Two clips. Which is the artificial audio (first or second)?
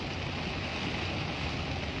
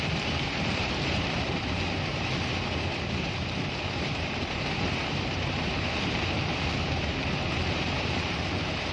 second